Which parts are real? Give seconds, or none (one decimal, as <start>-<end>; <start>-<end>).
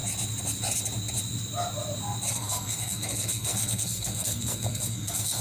0.0-2.3